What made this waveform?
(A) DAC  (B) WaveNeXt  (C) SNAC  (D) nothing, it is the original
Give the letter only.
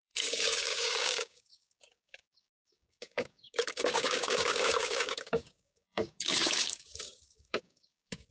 A